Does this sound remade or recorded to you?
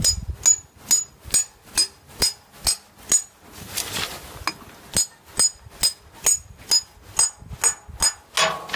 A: recorded